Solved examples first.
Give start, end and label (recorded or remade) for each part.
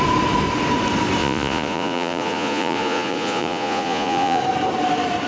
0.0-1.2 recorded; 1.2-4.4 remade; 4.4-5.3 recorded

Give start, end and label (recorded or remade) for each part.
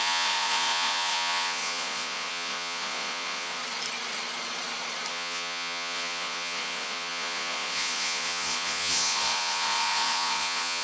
0.0-3.6 remade; 3.6-5.1 recorded; 5.1-10.8 remade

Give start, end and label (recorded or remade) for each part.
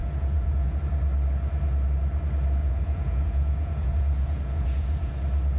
0.0-0.8 remade; 0.8-2.6 recorded; 2.6-5.1 remade; 5.1-5.6 recorded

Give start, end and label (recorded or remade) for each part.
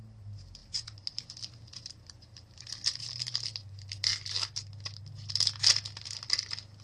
0.0-6.8 recorded